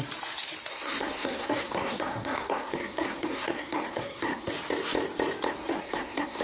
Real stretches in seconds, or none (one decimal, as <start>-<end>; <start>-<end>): 0.0-0.7; 4.5-5.5